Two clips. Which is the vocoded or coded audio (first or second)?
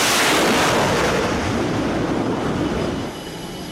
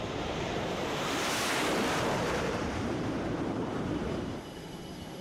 second